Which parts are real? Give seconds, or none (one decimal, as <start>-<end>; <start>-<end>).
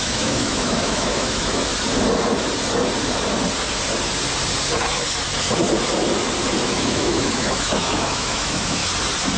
1.7-6.6; 8.8-9.4